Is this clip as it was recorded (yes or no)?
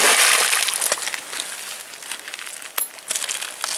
yes